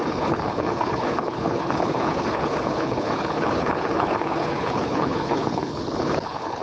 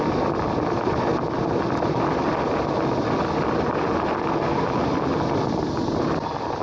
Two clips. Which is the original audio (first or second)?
second